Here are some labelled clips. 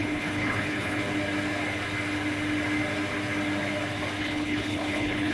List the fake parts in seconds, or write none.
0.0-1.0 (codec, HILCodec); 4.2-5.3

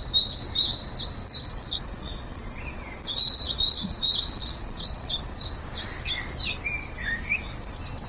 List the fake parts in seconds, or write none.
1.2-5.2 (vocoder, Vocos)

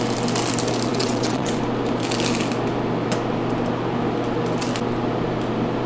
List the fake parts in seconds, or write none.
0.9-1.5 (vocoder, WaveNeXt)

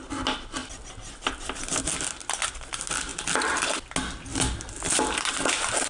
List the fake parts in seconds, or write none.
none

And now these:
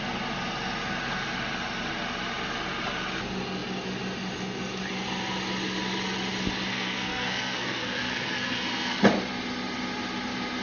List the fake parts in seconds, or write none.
6.7-9.0 (codec, SNAC)

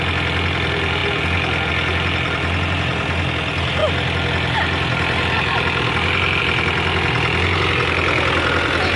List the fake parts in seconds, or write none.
none

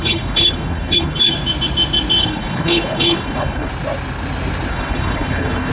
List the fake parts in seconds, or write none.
0.0-1.3 (codec, HILCodec); 2.2-3.7; 4.7-5.7

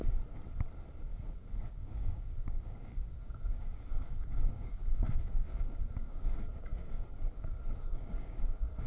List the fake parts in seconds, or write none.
1.1-5.6 (codec, DAC); 6.0-8.9